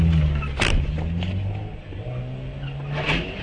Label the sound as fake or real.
real